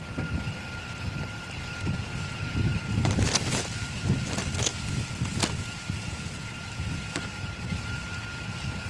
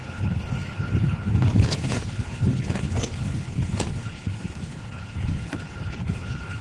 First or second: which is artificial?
second